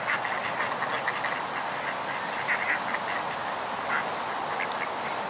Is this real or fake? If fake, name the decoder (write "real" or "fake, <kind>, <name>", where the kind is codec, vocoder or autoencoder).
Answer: real